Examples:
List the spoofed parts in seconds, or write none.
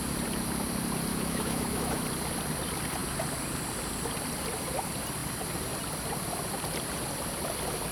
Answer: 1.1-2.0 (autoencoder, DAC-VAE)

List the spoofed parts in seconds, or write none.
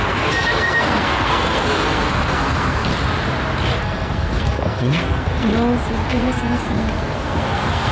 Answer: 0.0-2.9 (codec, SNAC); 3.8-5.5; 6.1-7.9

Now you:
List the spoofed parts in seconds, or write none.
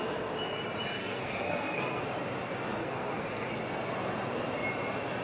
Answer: 1.0-2.0 (codec, SNAC); 2.8-3.5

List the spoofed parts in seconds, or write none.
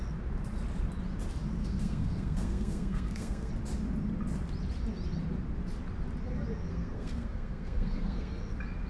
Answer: 1.6-3.5 (codec, SNAC); 6.7-8.4